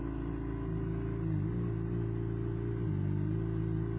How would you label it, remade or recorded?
recorded